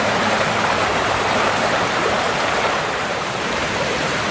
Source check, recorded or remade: remade